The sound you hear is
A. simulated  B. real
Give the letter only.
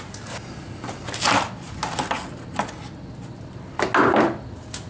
B